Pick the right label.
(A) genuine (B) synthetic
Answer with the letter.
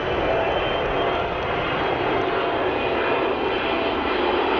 A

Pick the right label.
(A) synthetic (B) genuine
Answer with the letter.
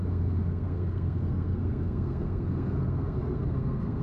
A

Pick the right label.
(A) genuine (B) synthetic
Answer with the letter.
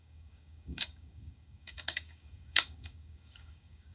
B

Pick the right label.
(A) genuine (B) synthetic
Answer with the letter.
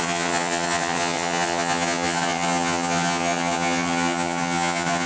B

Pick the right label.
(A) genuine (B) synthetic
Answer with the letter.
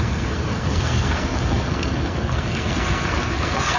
B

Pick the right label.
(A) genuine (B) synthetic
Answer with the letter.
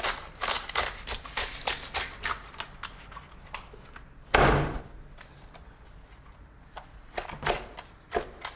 A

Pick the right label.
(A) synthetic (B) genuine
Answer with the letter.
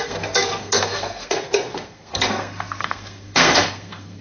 A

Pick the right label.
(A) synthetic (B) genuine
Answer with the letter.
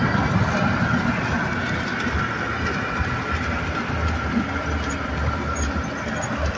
B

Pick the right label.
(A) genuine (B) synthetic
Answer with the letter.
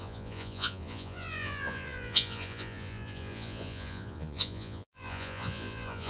B